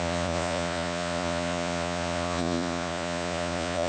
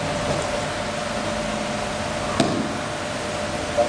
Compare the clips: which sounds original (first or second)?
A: second